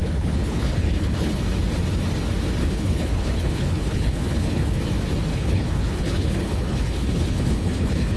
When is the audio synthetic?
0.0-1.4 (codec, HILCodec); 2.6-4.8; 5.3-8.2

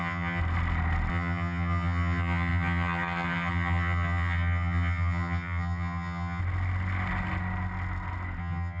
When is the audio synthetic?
0.0-0.4 (vocoder, HiFi-GAN); 1.1-6.4; 8.4-8.8

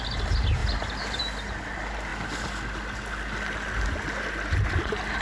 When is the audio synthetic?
none

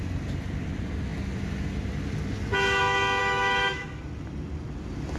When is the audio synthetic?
3.2-4.0 (autoencoder, DAC-VAE)